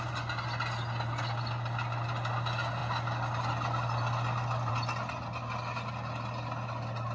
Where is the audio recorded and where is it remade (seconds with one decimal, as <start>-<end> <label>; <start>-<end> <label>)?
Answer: 0.0-7.1 recorded